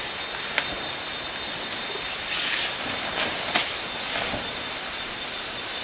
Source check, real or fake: real